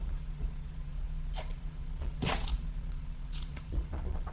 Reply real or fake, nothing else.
fake